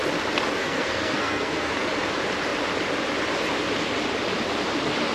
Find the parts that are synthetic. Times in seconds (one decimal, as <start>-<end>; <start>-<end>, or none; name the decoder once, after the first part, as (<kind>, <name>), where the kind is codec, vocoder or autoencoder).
0.5-1.9 (codec, SNAC)